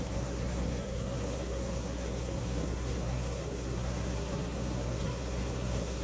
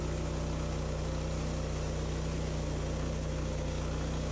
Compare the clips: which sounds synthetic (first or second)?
first